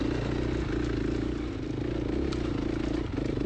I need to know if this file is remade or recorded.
recorded